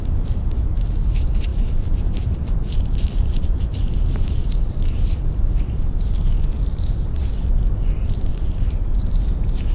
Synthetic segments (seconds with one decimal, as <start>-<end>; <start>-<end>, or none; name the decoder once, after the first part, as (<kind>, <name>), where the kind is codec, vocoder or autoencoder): 1.5-6.0 (vocoder, BigVGAN v2); 6.7-7.3; 8.3-9.0